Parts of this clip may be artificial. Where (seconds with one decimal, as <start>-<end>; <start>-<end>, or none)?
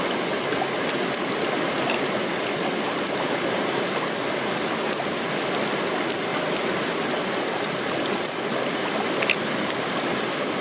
none